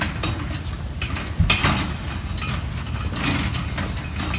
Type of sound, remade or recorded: recorded